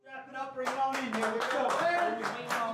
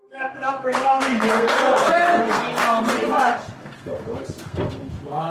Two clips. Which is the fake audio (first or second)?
second